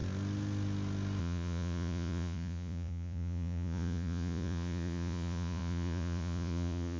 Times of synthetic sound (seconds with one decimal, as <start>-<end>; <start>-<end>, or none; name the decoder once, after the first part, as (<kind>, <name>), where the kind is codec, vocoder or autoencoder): 1.2-7.0 (vocoder, Vocos)